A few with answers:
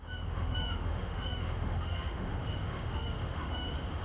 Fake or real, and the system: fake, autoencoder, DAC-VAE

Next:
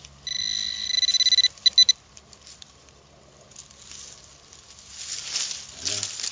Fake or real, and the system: real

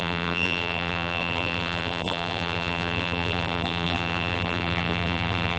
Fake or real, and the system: fake, vocoder, BigVGAN v2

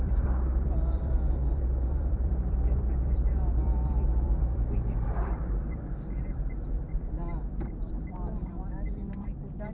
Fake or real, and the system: fake, vocoder, BigVGAN v2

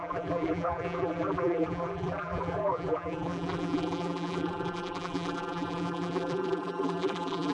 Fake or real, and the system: fake, vocoder, BigVGAN v2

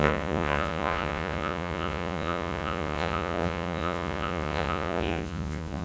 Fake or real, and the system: fake, vocoder, Vocos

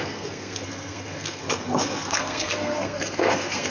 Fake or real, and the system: fake, codec, SNAC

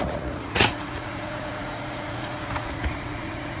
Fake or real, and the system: fake, vocoder, Vocos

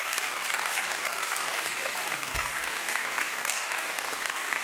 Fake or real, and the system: fake, codec, DAC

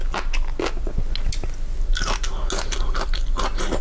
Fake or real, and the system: real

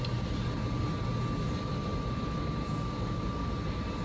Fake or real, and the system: real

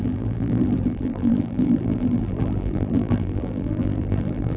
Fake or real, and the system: fake, vocoder, BigVGAN v2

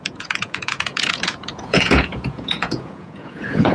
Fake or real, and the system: fake, vocoder, Vocos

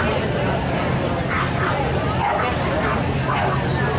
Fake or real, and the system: real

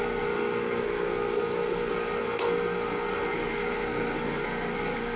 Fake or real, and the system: fake, codec, SNAC